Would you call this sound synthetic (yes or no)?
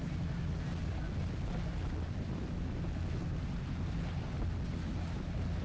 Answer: no